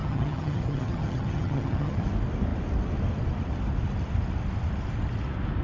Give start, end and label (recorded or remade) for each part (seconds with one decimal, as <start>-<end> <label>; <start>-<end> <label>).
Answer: 0.0-2.1 remade; 2.1-5.6 recorded